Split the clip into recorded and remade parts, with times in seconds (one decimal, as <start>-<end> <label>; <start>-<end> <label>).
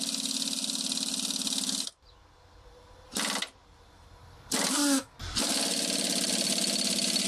0.0-7.3 recorded